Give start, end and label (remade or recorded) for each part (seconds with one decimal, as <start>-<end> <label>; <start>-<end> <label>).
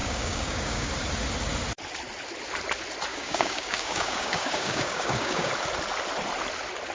0.0-0.9 remade; 0.9-3.1 recorded; 3.1-5.5 remade; 5.5-6.9 recorded